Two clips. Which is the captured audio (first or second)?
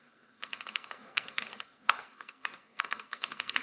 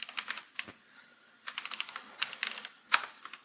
second